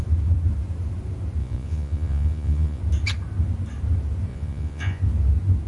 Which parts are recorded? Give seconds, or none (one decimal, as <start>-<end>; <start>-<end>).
0.0-1.4; 2.8-4.3; 5.0-5.7